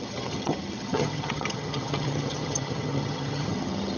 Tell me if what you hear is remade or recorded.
remade